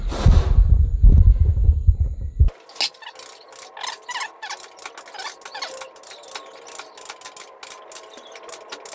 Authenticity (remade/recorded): recorded